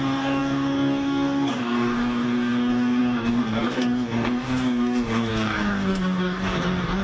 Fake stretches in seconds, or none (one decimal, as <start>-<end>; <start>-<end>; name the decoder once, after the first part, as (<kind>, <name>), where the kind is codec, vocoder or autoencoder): 0.0-7.0 (codec, DAC)